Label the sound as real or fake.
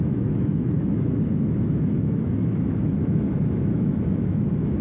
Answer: fake